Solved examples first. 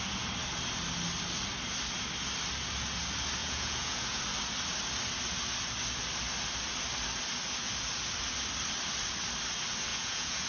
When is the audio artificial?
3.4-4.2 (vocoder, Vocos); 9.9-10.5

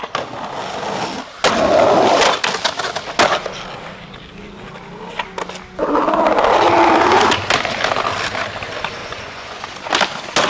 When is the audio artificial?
9.0-9.6 (vocoder, Vocos)

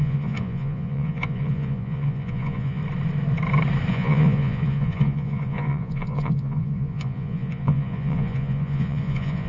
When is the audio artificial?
0.0-2.8 (vocoder, Vocos); 3.9-9.5

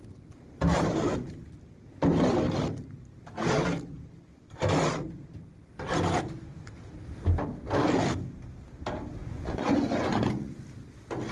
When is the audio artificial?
9.2-10.5 (vocoder, Vocos)

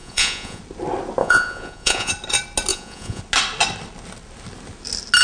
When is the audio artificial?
0.0-0.6 (vocoder, Vocos); 1.2-2.1; 2.7-3.2